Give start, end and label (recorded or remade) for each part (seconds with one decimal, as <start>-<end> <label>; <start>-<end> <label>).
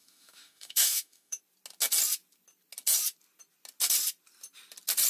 0.0-1.4 remade; 1.4-5.1 recorded